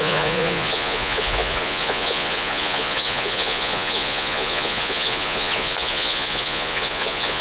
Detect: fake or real fake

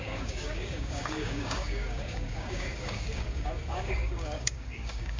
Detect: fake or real fake